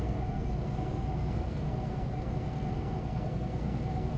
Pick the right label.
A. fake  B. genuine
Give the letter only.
A